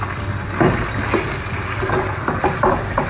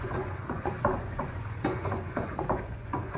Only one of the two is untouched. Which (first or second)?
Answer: first